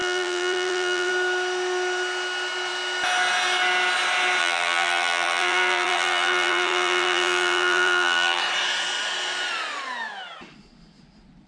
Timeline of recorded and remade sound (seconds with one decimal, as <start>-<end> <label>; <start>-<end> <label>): 0.0-1.1 remade; 1.1-4.4 recorded; 4.4-8.4 remade; 8.4-11.5 recorded